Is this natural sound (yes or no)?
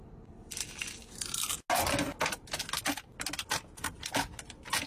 yes